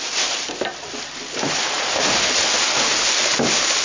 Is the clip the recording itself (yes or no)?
yes